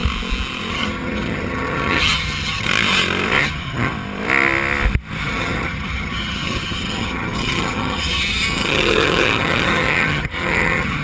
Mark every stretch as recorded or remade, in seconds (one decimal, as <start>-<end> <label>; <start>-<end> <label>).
0.0-0.7 recorded; 0.7-2.7 remade; 2.7-3.4 recorded; 3.4-3.9 remade; 3.9-5.2 recorded; 5.2-11.0 remade